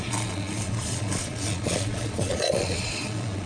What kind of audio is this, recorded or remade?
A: remade